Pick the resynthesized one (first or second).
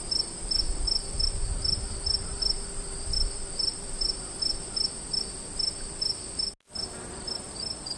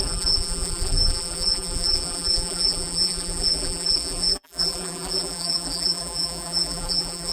second